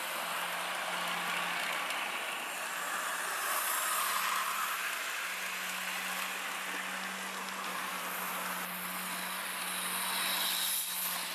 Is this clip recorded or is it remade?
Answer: recorded